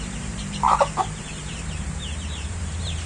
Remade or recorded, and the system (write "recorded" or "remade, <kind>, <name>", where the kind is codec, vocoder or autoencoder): remade, vocoder, BigVGAN v2